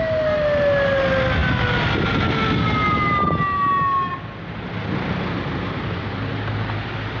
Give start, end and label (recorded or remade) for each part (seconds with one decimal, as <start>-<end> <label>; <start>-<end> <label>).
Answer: 0.0-7.2 recorded